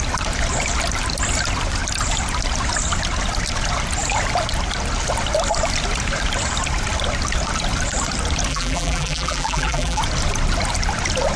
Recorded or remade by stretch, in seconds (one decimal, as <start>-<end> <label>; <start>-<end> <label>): 0.0-8.5 recorded; 8.5-10.0 remade; 10.0-11.4 recorded